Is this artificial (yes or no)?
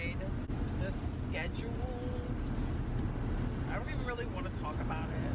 no